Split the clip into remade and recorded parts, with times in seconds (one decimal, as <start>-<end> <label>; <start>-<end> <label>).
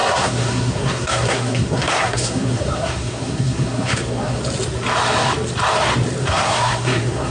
0.0-4.4 remade; 4.4-6.2 recorded; 6.2-7.3 remade